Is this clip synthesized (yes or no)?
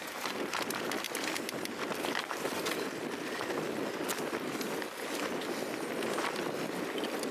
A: no